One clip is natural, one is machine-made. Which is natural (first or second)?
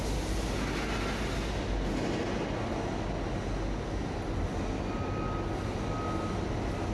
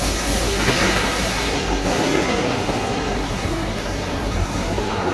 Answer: first